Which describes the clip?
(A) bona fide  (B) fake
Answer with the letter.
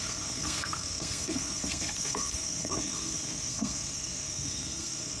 B